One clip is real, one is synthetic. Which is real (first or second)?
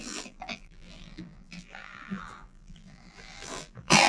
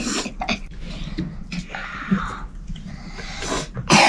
second